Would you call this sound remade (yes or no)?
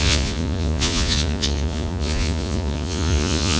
yes